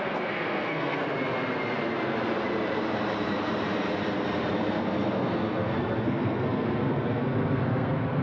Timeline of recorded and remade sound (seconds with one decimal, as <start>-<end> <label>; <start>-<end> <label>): 0.0-1.0 remade; 1.0-4.8 recorded; 4.8-8.2 remade